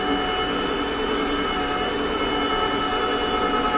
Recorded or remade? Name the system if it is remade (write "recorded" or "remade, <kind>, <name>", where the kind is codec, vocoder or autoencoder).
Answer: recorded